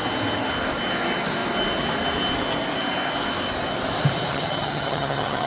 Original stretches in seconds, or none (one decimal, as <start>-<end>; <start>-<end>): 0.0-4.3